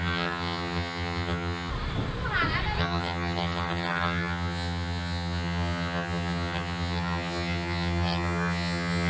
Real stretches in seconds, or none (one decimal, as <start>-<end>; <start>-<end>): 1.7-2.8